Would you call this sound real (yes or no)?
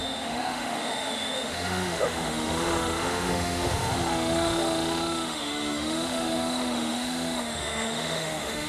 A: no